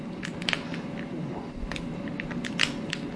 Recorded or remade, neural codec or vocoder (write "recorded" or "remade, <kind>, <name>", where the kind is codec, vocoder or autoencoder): recorded